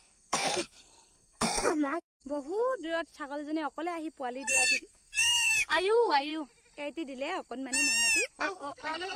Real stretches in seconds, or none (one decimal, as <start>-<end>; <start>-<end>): 3.1-4.5; 6.3-8.3